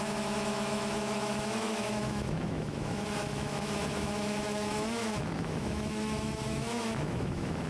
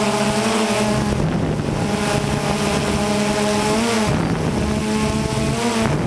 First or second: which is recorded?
second